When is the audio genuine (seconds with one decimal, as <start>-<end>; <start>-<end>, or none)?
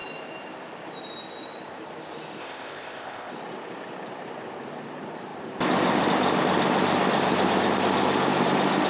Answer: 0.0-2.4; 3.3-8.9